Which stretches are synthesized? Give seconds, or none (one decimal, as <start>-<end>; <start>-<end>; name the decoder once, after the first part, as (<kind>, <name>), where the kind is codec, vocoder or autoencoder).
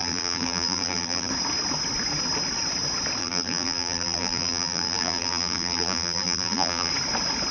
0.0-1.3 (vocoder, BigVGAN v2); 3.2-6.9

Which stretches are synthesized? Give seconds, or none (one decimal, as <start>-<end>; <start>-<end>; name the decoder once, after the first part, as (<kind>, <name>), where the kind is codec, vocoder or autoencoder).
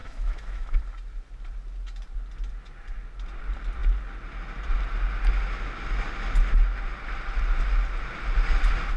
0.0-0.8 (autoencoder, DAC-VAE)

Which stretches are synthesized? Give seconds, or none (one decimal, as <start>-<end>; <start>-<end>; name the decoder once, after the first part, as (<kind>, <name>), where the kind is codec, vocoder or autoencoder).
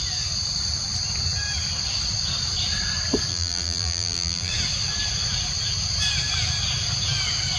3.3-4.5 (vocoder, BigVGAN v2)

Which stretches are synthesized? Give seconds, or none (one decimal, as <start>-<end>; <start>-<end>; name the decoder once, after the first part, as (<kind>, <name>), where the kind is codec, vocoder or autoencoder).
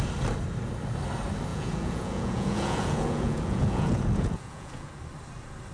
1.5-4.9 (vocoder, Vocos)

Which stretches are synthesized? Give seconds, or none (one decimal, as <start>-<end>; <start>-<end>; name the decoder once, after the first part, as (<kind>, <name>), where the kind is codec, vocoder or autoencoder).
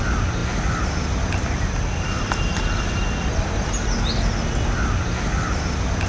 none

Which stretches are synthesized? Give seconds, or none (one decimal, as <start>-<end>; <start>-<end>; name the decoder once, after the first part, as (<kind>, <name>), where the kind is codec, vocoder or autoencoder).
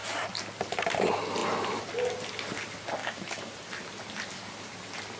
3.0-3.5 (autoencoder, DAC-VAE)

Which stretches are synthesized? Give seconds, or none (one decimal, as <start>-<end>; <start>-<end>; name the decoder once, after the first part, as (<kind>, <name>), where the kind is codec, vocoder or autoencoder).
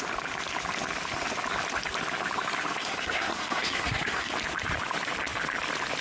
2.8-4.3 (codec, SNAC)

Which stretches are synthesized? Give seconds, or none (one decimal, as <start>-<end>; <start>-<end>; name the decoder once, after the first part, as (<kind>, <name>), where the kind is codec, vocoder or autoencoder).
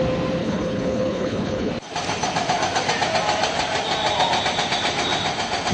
0.4-1.7 (codec, HILCodec)